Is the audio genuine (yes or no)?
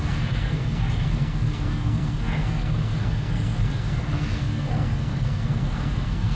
no